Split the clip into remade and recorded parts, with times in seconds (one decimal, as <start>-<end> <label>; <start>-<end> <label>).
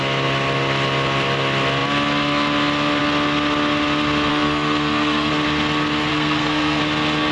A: 0.0-4.3 recorded; 4.3-5.3 remade; 5.3-6.1 recorded; 6.1-6.8 remade; 6.8-7.3 recorded